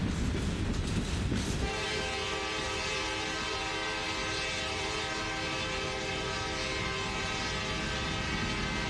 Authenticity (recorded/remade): recorded